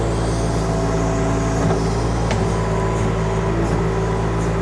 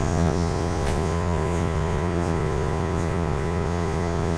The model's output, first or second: second